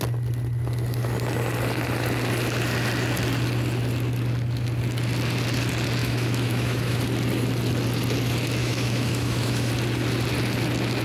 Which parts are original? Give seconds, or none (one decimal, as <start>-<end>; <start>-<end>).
0.0-6.0; 7.0-8.6; 9.7-11.0